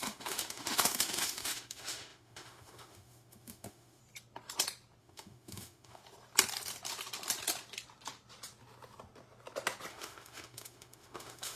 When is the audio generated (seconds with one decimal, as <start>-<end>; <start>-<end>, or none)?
0.0-4.0; 5.0-6.0; 9.9-11.6